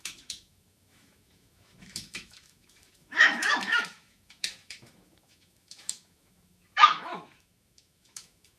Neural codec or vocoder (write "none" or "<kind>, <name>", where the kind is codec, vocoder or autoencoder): autoencoder, DAC-VAE